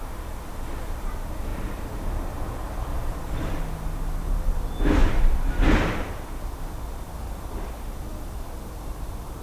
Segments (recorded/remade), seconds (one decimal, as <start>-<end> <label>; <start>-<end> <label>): 0.0-2.9 recorded; 2.9-3.6 remade; 3.6-9.4 recorded